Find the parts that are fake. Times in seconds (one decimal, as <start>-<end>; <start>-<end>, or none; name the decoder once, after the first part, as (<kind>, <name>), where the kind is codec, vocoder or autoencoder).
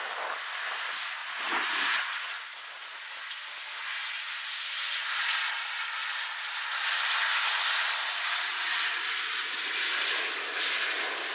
1.2-3.1 (vocoder, Vocos)